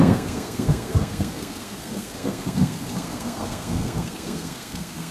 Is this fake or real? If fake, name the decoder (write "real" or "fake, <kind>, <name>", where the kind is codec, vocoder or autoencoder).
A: fake, codec, SNAC